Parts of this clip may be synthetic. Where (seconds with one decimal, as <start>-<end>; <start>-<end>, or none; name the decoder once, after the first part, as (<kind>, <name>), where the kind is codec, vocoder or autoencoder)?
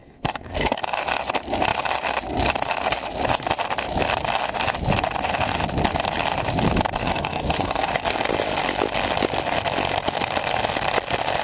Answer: 0.0-0.8 (codec, SNAC); 7.0-7.9